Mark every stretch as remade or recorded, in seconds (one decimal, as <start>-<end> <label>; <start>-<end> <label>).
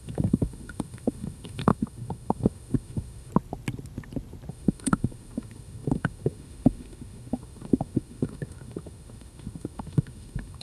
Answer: 0.0-3.3 remade; 3.3-4.5 recorded; 4.5-10.6 remade